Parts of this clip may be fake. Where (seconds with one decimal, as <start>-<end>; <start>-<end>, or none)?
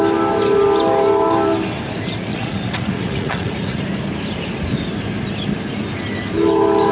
2.3-3.8